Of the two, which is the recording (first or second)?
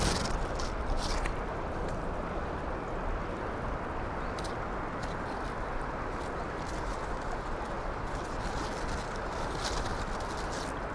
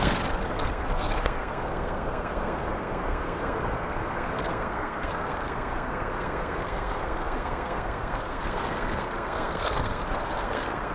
first